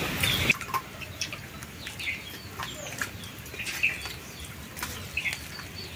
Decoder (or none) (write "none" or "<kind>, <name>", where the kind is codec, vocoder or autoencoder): none